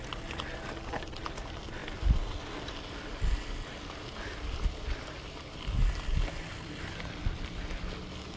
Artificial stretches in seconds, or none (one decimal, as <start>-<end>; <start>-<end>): none